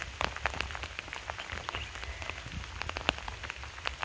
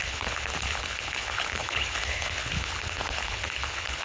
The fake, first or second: second